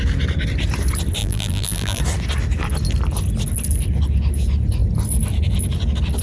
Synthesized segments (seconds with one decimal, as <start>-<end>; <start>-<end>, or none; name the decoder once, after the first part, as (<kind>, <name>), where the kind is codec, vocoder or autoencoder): 1.2-2.0 (vocoder, BigVGAN v2)